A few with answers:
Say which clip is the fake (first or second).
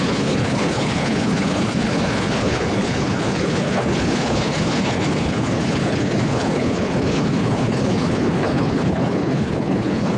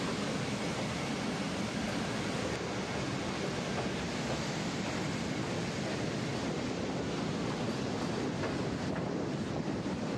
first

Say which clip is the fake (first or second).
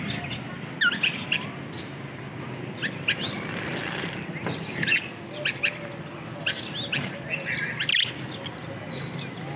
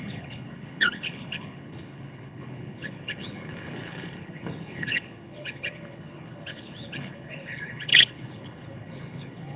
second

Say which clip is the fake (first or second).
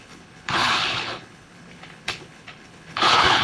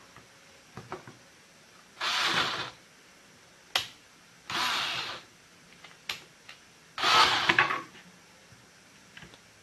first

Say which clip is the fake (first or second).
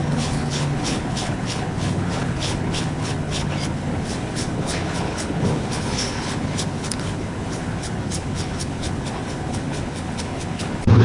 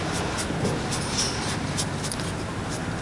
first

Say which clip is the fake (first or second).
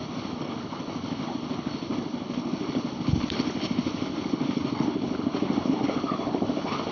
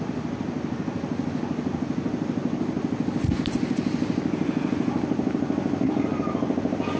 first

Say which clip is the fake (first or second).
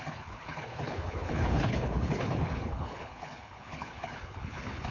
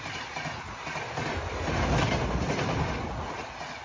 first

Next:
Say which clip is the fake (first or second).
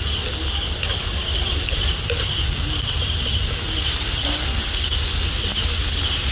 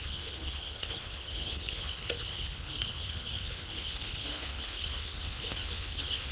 second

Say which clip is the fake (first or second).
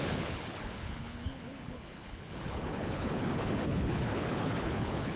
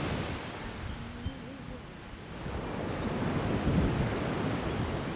first